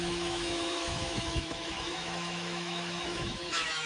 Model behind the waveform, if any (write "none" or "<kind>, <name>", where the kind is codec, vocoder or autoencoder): autoencoder, DAC-VAE